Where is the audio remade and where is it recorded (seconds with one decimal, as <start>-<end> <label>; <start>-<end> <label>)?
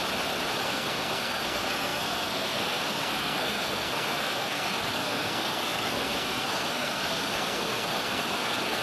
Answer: 0.0-0.6 recorded; 0.6-8.8 remade